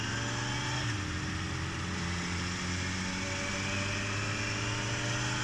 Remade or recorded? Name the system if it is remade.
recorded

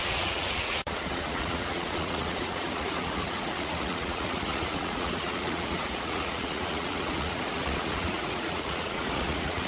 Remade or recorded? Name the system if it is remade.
remade, vocoder, Vocos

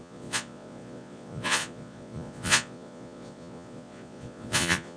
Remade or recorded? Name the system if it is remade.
remade, vocoder, Vocos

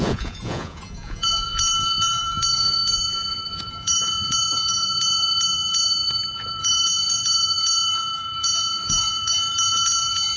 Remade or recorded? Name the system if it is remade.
remade, vocoder, Vocos